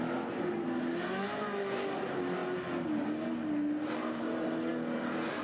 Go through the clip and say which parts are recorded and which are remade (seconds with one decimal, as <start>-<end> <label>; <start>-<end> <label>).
0.0-5.4 recorded